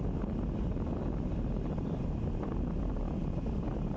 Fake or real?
real